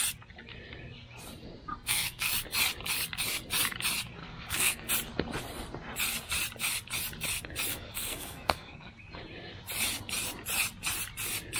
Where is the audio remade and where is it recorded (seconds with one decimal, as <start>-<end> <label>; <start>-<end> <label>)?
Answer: 0.0-1.7 recorded; 1.7-2.3 remade; 2.3-4.2 recorded; 4.2-4.9 remade; 4.9-7.7 recorded; 7.7-9.0 remade; 9.0-11.6 recorded